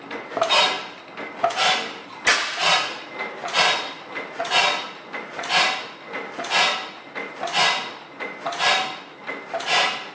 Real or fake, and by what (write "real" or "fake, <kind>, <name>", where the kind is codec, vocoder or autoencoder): real